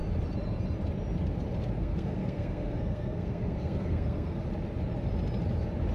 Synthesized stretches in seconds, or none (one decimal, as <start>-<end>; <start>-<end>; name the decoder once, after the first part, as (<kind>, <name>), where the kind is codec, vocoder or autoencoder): 1.8-4.4 (codec, SNAC)